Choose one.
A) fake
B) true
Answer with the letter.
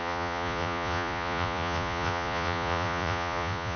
A